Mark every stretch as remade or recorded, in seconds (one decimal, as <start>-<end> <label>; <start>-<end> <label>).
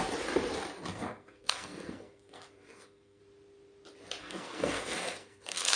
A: 0.0-0.9 recorded; 0.9-3.2 remade; 3.2-4.2 recorded; 4.2-5.8 remade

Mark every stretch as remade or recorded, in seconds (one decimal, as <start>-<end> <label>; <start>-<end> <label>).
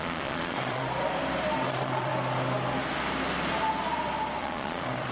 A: 0.0-0.8 remade; 0.8-1.7 recorded; 1.7-2.1 remade; 2.1-4.4 recorded; 4.4-5.1 remade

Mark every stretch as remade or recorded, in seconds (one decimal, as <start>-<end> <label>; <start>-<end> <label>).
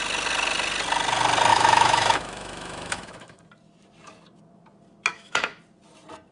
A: 0.0-1.5 recorded; 1.5-3.4 remade; 3.4-5.1 recorded; 5.1-5.6 remade; 5.6-6.3 recorded